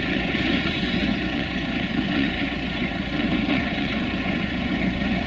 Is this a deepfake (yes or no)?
yes